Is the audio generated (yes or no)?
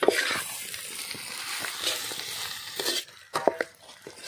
yes